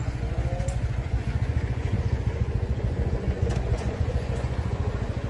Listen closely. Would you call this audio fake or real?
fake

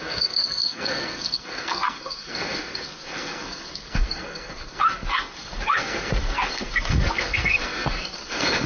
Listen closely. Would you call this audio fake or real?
fake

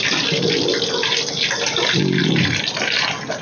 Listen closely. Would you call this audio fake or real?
real